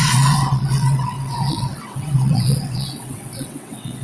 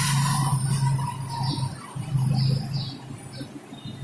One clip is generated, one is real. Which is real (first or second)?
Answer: second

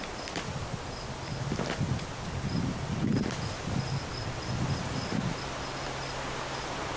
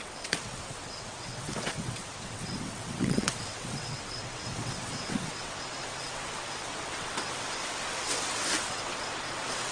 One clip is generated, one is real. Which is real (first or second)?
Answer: first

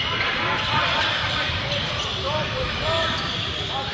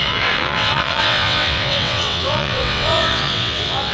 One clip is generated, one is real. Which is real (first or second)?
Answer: first